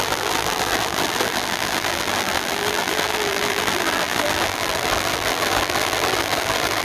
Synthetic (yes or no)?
yes